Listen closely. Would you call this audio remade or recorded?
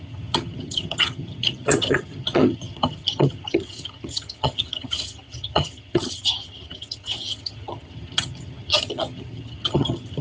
remade